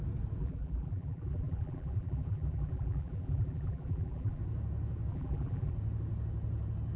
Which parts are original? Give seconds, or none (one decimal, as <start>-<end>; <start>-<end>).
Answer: 0.0-0.4; 4.4-5.1; 5.7-7.0